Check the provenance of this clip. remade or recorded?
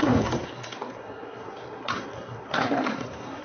remade